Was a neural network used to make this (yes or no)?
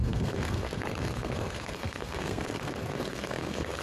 yes